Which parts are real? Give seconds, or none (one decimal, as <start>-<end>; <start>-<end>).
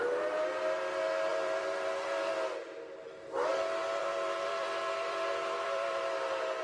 0.0-1.3; 2.3-3.5; 6.0-6.6